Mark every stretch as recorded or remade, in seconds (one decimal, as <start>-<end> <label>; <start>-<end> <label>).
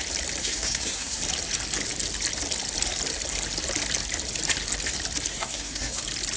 0.0-0.4 recorded; 0.4-1.2 remade; 1.2-5.3 recorded; 5.3-6.0 remade; 6.0-6.4 recorded